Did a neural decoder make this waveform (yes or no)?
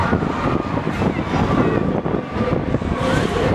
no